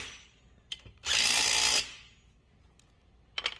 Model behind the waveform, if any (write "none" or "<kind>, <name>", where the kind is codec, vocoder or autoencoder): none